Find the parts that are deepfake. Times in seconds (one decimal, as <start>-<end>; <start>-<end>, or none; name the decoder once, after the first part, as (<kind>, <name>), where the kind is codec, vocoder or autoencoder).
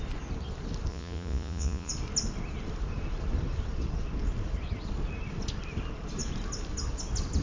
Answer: 0.9-1.9 (vocoder, Vocos)